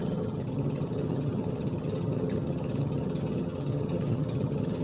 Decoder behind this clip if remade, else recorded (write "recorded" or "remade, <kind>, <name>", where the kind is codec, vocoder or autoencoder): remade, vocoder, HiFi-GAN